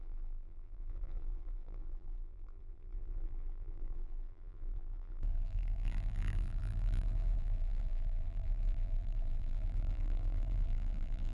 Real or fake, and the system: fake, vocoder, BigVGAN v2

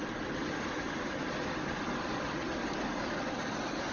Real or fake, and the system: real